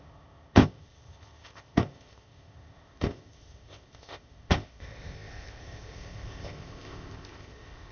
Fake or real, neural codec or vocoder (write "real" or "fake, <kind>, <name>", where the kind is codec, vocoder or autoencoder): fake, codec, ZipCodec